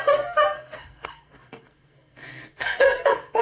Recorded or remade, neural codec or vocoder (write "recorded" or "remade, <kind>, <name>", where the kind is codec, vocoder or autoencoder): remade, codec, SNAC